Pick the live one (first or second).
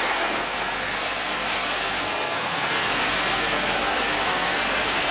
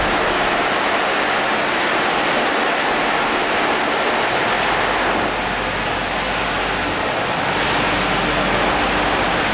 second